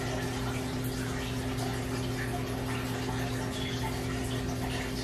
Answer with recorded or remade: recorded